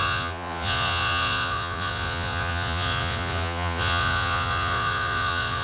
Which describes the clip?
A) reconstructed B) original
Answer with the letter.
A